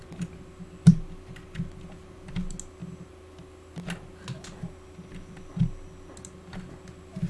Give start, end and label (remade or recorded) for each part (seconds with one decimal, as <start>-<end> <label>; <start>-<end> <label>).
0.0-7.3 recorded